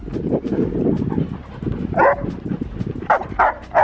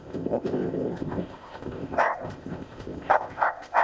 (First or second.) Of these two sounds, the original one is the first